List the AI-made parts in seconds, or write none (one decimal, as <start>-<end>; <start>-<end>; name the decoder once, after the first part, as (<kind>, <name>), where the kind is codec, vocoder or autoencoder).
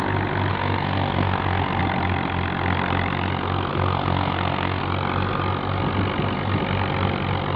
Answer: 0.5-1.8 (codec, SNAC); 3.7-4.8